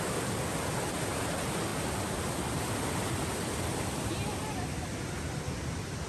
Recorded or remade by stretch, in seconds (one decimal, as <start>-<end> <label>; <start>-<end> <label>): 0.0-6.1 recorded